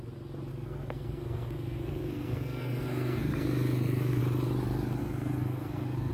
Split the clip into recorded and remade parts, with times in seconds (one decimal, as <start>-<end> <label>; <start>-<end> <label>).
0.0-0.5 recorded; 0.5-4.2 remade; 4.2-5.0 recorded; 5.0-6.1 remade